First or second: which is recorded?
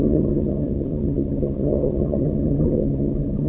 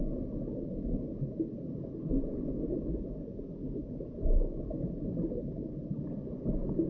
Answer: second